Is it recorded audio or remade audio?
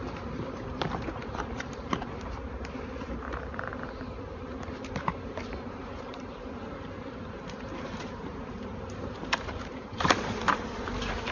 remade